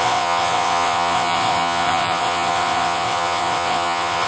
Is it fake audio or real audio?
fake